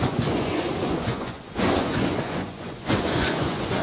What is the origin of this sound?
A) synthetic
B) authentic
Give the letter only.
A